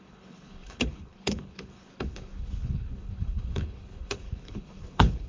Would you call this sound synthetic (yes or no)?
yes